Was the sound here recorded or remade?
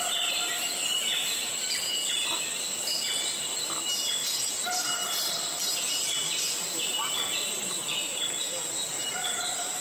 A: recorded